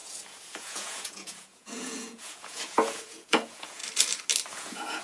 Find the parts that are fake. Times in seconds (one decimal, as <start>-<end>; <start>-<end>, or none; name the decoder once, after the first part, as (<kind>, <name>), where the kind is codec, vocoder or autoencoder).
0.0-3.8 (vocoder, Vocos); 4.5-5.0